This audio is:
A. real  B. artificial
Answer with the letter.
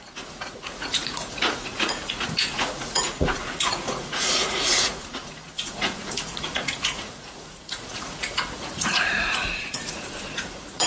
B